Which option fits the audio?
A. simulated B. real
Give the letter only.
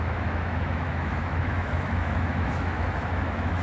A